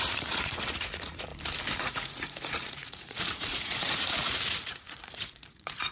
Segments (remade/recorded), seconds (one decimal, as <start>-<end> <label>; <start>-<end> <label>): 0.0-1.3 remade; 1.3-1.8 recorded; 1.8-5.9 remade